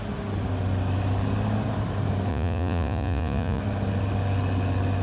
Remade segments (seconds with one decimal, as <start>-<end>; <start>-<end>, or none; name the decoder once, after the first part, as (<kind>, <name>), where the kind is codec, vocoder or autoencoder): 2.3-3.6 (vocoder, Vocos)